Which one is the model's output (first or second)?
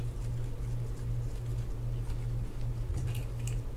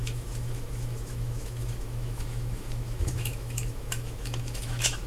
second